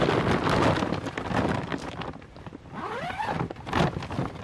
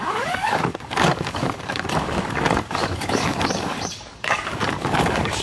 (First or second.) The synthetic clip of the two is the second